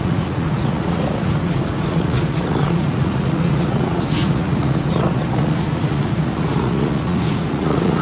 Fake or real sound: fake